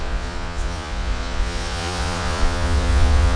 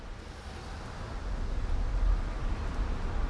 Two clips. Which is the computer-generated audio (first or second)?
first